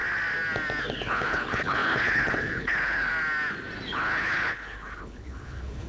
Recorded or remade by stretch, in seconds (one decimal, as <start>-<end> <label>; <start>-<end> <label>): 0.0-0.9 recorded; 0.9-3.1 remade; 3.1-3.9 recorded; 3.9-5.9 remade